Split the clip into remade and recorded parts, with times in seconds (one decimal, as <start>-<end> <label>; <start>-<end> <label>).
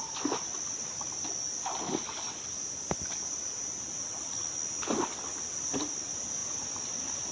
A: 0.0-7.3 recorded